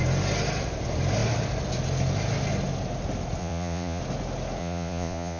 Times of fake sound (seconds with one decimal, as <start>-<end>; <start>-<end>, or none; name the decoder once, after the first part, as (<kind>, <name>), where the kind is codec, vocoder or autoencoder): 3.4-4.0 (vocoder, Vocos); 4.6-5.4